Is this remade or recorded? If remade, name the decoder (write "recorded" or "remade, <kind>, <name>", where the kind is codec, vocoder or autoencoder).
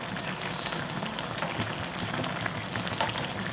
recorded